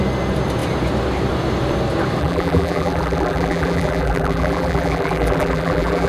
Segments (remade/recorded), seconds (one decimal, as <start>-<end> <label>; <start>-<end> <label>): 0.0-2.2 recorded; 2.2-6.1 remade